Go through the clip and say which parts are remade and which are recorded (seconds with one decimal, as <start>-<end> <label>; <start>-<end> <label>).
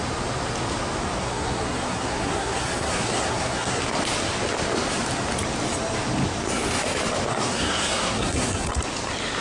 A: 0.0-1.2 recorded; 1.2-3.8 remade; 3.8-7.3 recorded; 7.3-8.8 remade; 8.8-9.4 recorded